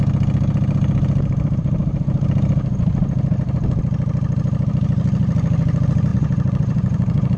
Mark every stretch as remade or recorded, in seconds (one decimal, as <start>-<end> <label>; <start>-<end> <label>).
0.0-6.1 recorded; 6.1-7.4 remade